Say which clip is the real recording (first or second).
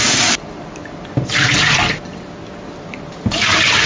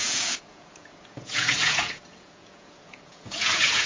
first